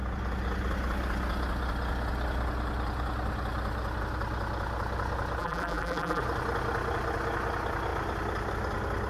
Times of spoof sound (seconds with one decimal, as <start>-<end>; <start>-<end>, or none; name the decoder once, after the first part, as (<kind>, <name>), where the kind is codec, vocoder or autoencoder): 5.4-6.2 (vocoder, BigVGAN v2)

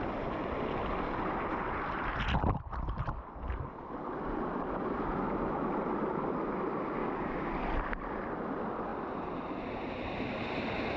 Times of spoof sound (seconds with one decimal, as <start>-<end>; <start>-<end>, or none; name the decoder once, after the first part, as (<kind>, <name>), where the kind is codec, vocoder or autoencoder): 7.0-7.5 (codec, DAC)

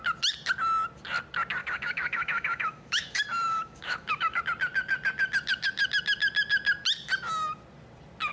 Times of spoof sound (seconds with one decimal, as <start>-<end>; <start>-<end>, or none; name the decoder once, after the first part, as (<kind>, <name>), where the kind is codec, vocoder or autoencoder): 1.6-4.4 (autoencoder, DAC-VAE)

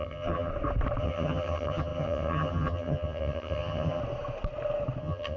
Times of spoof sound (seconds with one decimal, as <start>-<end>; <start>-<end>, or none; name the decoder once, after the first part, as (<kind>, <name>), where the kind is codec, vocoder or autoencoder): 0.0-0.5 (vocoder, HiFi-GAN); 1.0-4.0; 5.0-5.4

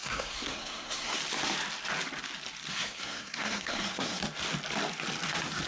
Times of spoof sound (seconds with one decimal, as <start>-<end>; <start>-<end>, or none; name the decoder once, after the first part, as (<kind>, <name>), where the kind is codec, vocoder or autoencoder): 0.0-1.2 (codec, SNAC); 2.7-4.2

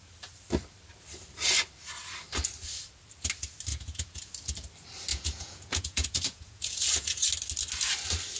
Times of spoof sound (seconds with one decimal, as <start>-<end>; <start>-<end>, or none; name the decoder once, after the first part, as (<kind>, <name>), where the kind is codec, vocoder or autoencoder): 3.7-4.3 (vocoder, Vocos); 5.1-7.2